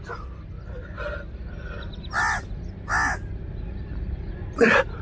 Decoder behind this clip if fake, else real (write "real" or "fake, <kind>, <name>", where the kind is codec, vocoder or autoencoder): real